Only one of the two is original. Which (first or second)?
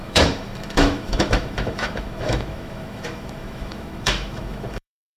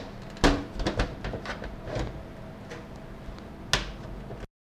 second